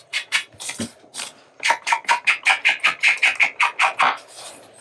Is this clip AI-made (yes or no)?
yes